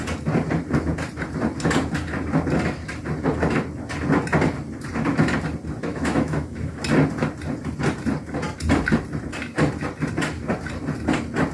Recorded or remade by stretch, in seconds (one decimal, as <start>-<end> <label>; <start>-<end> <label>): 0.0-5.9 recorded; 5.9-6.8 remade; 6.8-11.5 recorded